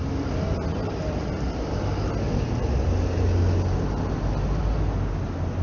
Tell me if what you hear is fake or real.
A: real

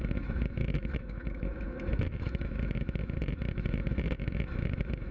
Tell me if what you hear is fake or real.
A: fake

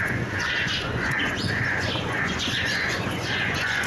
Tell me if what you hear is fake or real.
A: fake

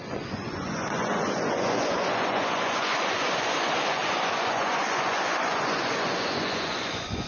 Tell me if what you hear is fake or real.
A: fake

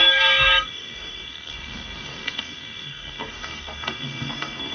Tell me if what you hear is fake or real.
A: fake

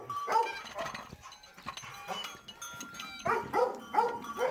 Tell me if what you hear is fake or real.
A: real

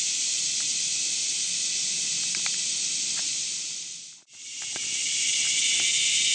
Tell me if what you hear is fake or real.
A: fake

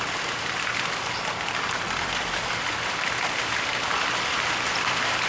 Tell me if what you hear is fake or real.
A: fake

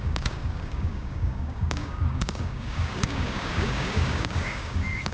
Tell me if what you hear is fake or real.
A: fake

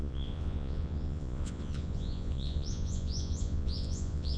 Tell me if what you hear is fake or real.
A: fake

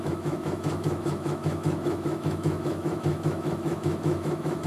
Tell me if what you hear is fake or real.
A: fake